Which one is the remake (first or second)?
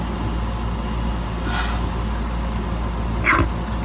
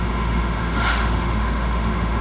second